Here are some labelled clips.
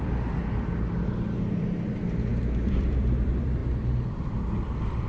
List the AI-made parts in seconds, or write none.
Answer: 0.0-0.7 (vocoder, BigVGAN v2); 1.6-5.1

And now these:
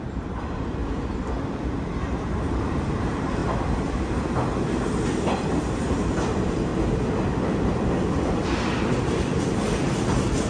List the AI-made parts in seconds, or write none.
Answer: 0.0-0.8 (vocoder, BigVGAN v2); 1.5-3.4; 5.4-6.7; 8.4-10.5